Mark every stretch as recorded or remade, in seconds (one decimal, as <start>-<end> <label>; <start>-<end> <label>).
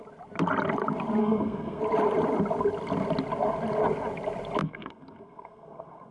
0.0-1.2 recorded; 1.2-1.8 remade; 1.8-4.6 recorded; 4.6-6.1 remade